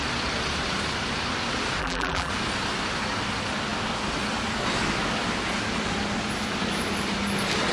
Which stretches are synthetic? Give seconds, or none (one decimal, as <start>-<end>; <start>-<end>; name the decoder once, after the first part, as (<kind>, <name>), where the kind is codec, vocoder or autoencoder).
1.8-2.3 (vocoder, BigVGAN v2)